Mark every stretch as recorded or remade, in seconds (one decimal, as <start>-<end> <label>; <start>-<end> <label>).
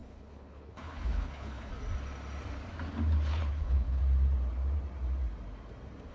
0.0-1.7 remade; 1.7-3.3 recorded; 3.3-4.0 remade; 4.0-6.1 recorded